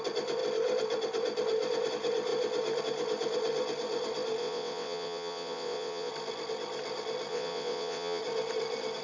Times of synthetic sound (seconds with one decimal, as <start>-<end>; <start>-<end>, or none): 4.4-6.1; 7.3-8.2